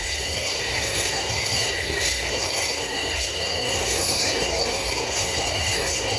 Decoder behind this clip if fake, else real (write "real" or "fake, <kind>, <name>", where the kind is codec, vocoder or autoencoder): fake, codec, SNAC